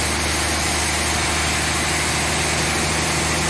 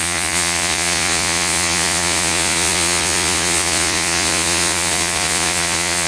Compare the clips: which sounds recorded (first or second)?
first